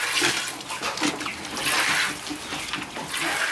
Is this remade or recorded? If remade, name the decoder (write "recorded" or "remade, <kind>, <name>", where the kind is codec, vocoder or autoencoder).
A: recorded